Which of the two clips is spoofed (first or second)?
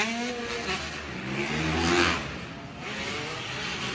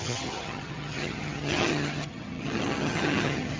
second